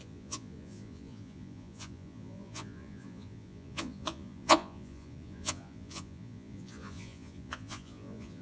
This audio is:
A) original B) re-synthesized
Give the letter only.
B